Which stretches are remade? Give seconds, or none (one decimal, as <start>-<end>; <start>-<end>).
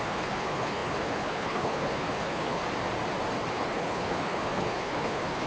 0.0-2.6; 3.5-5.5